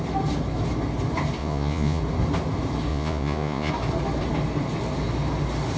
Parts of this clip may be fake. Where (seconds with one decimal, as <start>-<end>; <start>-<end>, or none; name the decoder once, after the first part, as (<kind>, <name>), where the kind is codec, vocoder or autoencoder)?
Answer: 1.4-2.0 (vocoder, Vocos); 2.9-3.7